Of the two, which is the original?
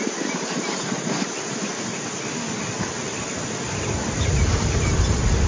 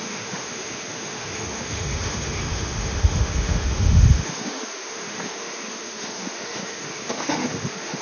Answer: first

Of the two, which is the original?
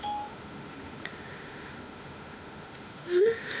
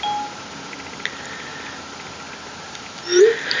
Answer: second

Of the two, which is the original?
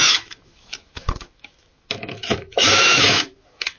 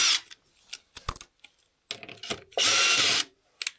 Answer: second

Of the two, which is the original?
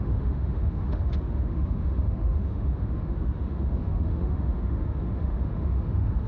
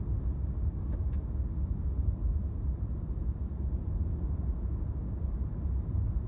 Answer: second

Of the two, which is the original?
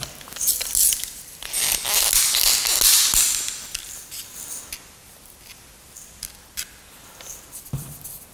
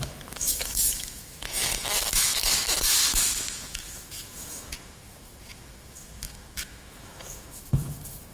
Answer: first